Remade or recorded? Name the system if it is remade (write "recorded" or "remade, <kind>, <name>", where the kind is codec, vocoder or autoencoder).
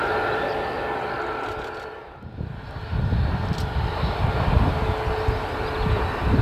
recorded